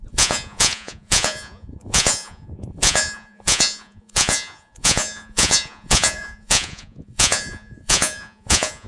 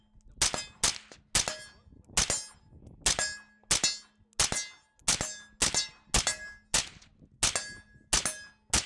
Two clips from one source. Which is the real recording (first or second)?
second